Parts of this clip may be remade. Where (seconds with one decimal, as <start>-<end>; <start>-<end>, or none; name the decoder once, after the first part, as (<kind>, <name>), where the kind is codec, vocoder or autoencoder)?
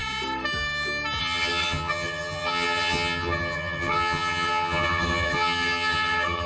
1.2-6.5 (vocoder, HiFi-GAN)